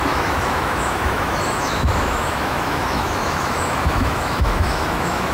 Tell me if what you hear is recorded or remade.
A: remade